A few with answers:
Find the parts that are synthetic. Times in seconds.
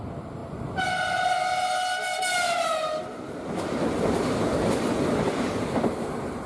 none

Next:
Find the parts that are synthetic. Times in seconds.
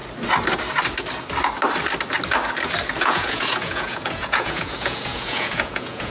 3.0-6.1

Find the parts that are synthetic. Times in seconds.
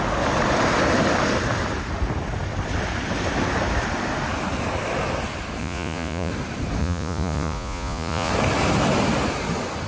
5.6-6.3; 6.8-8.3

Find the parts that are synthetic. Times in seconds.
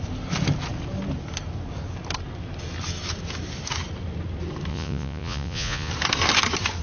4.7-5.9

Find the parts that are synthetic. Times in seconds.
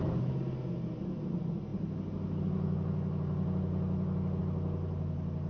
none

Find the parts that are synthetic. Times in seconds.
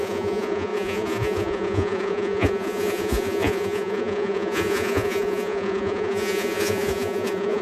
0.0-7.6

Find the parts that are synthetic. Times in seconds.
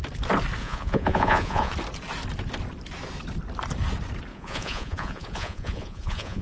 0.6-1.7; 4.3-6.4